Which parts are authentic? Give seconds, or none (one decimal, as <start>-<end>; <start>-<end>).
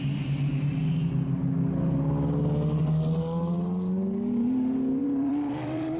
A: 0.0-5.0